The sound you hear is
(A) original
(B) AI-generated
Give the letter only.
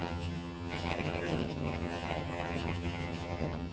B